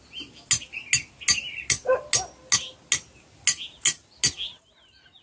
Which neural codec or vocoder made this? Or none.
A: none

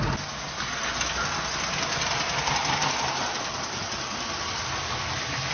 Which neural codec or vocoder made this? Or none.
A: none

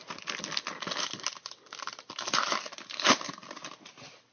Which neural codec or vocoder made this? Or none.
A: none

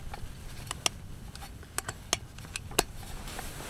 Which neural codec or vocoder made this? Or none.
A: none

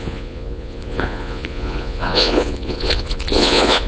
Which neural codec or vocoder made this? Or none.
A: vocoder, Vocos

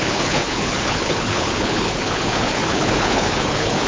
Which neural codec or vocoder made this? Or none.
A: codec, HILCodec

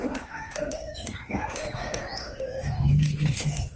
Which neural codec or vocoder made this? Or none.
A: autoencoder, DAC-VAE